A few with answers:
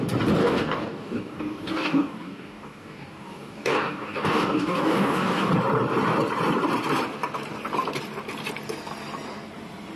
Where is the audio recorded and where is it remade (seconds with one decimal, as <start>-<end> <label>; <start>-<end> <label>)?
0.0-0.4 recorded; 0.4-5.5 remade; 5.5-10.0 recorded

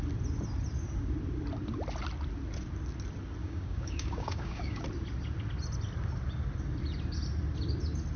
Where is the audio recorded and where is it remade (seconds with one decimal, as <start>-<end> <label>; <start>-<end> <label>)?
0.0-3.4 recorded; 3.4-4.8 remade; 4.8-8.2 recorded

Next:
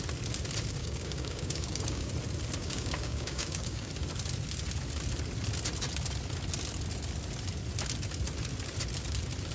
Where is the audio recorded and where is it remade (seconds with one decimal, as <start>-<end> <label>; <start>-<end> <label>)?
0.0-0.8 recorded; 0.8-2.1 remade; 2.1-2.6 recorded; 2.6-3.9 remade; 3.9-9.5 recorded